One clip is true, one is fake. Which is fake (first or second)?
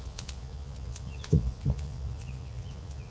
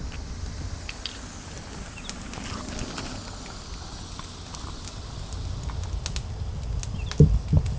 first